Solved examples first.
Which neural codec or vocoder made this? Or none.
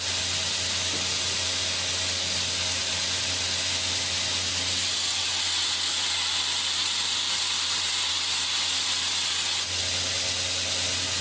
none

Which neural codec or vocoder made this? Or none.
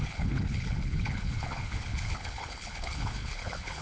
codec, HILCodec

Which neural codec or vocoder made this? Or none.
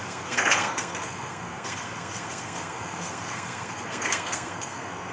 codec, SNAC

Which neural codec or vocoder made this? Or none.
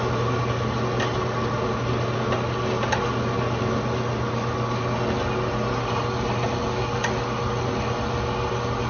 none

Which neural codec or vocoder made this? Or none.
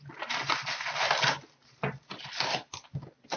none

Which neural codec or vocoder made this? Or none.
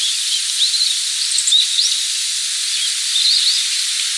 none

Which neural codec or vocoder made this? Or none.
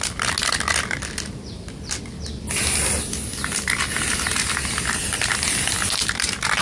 none